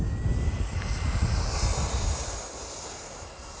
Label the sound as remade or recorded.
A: recorded